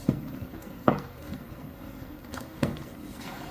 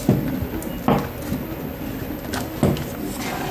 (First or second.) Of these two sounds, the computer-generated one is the first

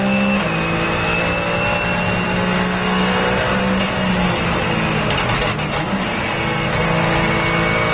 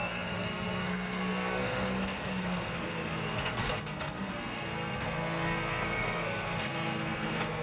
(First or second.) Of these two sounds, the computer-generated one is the second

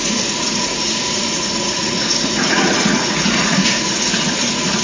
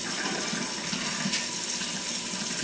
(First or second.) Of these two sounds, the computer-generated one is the first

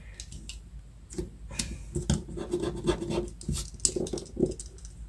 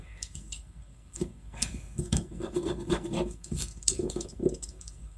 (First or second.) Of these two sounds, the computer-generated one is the second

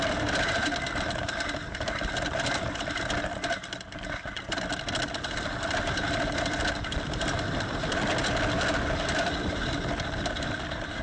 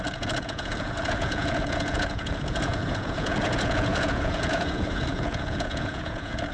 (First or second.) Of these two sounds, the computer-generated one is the second